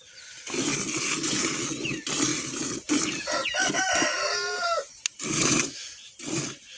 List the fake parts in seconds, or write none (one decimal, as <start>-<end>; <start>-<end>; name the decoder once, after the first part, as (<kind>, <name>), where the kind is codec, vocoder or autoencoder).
none

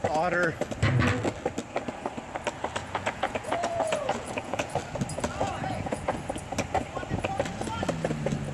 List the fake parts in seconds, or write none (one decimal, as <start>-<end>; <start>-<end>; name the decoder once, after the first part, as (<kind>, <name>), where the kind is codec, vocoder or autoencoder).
2.8-4.8 (vocoder, Vocos); 5.4-6.2

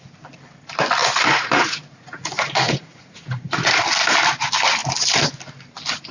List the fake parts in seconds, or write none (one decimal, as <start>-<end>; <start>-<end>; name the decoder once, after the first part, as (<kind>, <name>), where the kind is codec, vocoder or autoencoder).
1.0-3.8 (vocoder, Vocos)

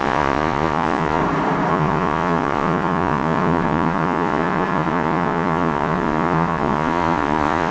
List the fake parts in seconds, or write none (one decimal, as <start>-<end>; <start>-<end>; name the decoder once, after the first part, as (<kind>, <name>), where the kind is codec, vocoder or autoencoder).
0.0-1.2 (vocoder, Vocos); 1.7-7.7

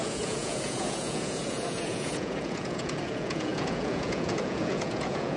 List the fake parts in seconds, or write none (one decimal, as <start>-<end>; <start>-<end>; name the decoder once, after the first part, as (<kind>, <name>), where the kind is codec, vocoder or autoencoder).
0.0-5.4 (vocoder, Vocos)

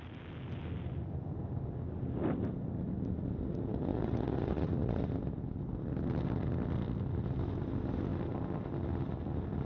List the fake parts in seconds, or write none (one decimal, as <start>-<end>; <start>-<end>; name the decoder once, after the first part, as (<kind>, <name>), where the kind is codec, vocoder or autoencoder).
3.9-5.0 (vocoder, Vocos)

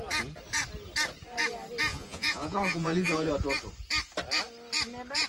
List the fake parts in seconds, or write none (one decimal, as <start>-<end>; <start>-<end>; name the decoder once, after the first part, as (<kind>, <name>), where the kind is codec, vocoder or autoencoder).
1.9-3.3 (vocoder, Vocos)

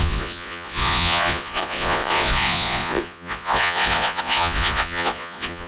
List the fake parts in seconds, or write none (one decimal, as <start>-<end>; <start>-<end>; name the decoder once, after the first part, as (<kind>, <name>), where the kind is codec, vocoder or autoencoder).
0.0-5.7 (vocoder, Vocos)